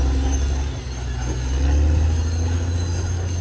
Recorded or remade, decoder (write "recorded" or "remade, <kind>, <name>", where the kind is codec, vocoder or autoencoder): recorded